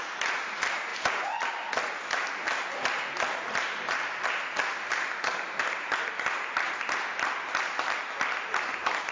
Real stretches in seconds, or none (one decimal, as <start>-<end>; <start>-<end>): 0.0-9.1